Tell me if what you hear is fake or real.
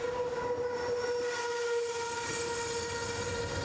real